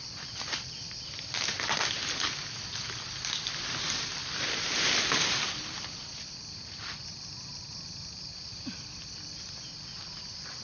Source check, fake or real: real